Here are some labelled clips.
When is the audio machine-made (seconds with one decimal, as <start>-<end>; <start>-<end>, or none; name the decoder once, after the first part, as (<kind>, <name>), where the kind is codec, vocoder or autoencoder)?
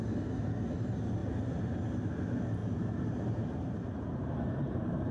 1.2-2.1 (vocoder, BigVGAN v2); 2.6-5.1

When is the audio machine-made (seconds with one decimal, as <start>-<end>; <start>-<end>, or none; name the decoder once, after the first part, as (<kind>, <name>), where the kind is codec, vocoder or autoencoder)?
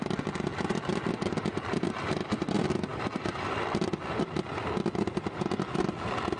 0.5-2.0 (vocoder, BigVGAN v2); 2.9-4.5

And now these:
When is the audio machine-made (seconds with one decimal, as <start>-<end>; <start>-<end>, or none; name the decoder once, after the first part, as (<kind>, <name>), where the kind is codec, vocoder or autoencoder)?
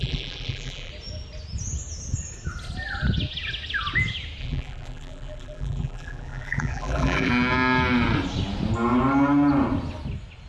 0.0-0.9 (vocoder, BigVGAN v2); 4.4-7.3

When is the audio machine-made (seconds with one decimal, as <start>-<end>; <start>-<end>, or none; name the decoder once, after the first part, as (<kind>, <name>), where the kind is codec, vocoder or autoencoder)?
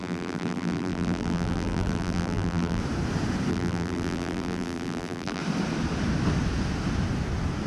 0.0-2.8 (vocoder, BigVGAN v2); 3.5-5.4